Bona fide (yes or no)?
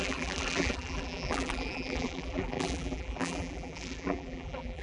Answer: no